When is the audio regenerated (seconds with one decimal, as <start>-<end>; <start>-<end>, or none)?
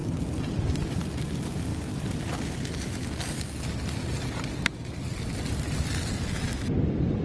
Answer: none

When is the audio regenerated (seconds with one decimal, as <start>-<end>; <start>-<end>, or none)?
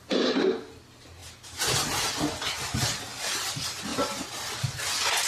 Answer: none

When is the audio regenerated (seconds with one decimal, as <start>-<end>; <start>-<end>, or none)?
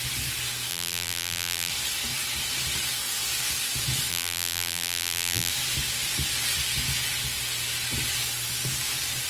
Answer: 0.7-1.7; 4.1-5.5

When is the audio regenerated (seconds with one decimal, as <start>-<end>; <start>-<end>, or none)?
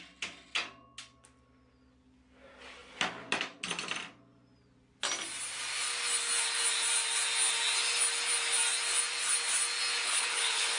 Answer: 10.0-10.8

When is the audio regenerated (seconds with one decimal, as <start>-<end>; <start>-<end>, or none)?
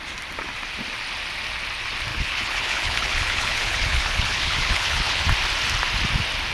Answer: 2.1-5.2